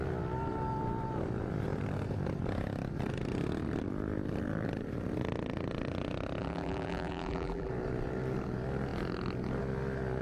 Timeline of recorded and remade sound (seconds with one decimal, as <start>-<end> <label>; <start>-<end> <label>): 0.0-6.4 recorded; 6.4-7.7 remade; 7.7-10.2 recorded